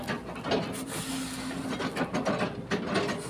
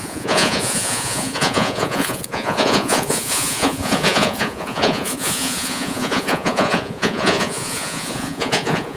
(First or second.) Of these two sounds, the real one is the first